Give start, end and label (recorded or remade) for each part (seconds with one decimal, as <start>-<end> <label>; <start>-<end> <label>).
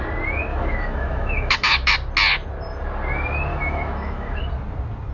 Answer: 0.0-0.5 recorded; 0.5-1.9 remade; 1.9-3.5 recorded; 3.5-4.4 remade; 4.4-5.1 recorded